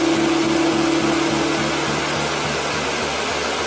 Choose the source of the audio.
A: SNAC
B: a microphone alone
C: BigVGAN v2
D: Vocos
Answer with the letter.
B